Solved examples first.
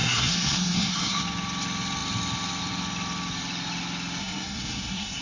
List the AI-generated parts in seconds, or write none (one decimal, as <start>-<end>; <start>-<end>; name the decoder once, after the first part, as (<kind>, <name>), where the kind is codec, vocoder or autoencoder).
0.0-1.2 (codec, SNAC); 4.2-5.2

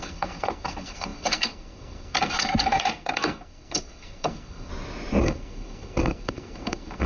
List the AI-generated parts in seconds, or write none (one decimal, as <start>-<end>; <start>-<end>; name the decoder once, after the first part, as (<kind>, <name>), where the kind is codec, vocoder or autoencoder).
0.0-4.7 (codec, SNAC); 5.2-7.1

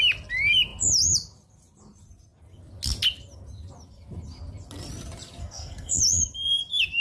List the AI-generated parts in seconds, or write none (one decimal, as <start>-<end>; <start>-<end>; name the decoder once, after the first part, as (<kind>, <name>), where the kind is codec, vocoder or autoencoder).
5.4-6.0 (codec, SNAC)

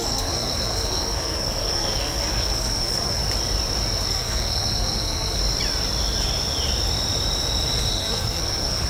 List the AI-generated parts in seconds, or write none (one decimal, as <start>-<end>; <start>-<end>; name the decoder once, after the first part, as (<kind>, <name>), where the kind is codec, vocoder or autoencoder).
0.0-3.2 (codec, SNAC); 4.1-5.4; 7.9-8.9